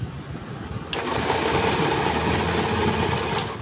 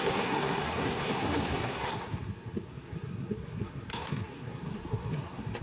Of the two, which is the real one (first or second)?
first